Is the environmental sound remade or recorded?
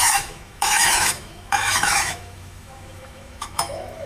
remade